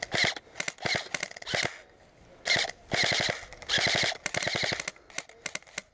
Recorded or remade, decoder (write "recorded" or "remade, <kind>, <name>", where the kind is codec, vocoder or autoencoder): recorded